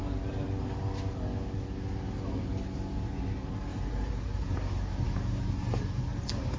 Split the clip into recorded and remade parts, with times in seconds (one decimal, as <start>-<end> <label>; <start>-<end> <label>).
0.0-3.7 recorded; 3.7-6.6 remade